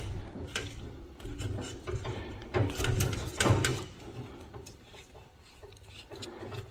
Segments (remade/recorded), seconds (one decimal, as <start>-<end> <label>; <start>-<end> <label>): 0.0-6.7 recorded

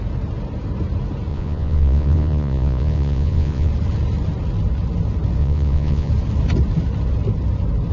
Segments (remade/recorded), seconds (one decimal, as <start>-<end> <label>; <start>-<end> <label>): 0.0-1.3 recorded; 1.3-3.7 remade; 3.7-5.4 recorded; 5.4-6.1 remade; 6.1-7.9 recorded

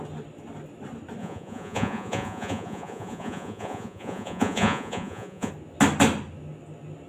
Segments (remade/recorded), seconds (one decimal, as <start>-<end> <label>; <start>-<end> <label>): 0.0-1.2 recorded; 1.2-5.5 remade; 5.5-7.1 recorded

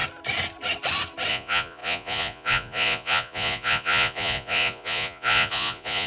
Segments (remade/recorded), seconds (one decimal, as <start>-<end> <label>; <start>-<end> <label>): 0.0-1.3 recorded; 1.3-6.1 remade

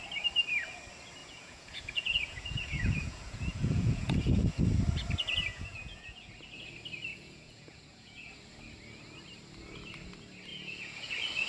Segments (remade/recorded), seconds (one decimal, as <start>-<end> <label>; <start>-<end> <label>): 0.0-1.2 recorded; 1.2-4.6 remade; 4.6-5.5 recorded; 5.5-6.2 remade; 6.2-7.1 recorded; 7.1-8.3 remade; 8.3-10.5 recorded; 10.5-11.1 remade; 11.1-11.5 recorded

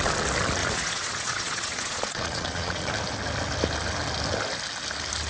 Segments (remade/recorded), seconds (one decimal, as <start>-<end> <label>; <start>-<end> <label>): 0.0-0.6 recorded; 0.6-2.9 remade; 2.9-5.3 recorded

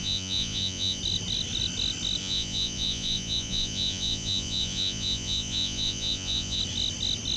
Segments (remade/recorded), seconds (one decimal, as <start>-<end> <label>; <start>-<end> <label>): 0.0-1.0 remade; 1.0-2.2 recorded; 2.2-6.6 remade; 6.6-7.4 recorded

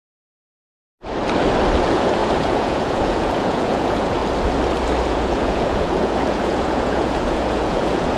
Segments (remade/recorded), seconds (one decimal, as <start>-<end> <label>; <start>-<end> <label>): 0.0-1.8 recorded; 1.8-4.2 remade; 4.2-5.1 recorded; 5.1-8.2 remade